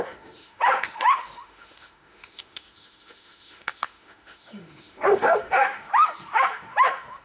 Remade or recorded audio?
remade